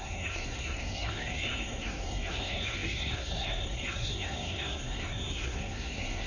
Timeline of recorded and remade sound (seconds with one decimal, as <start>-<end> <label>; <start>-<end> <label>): 0.0-6.3 remade